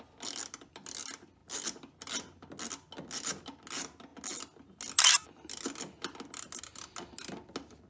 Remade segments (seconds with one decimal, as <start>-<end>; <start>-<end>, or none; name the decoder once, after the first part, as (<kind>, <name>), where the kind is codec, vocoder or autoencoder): none